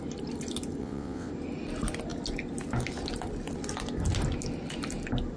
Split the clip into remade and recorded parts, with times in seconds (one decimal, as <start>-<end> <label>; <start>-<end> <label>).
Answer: 0.0-0.8 recorded; 0.8-1.3 remade; 1.3-5.4 recorded